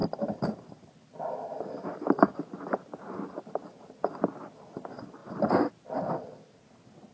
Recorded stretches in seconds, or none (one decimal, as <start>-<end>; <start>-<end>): 0.0-7.1